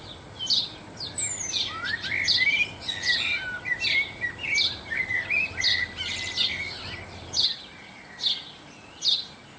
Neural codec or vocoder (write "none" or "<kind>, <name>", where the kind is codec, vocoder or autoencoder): none